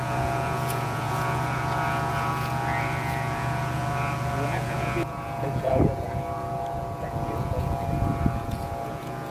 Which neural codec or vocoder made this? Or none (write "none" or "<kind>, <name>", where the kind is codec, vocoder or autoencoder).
vocoder, Vocos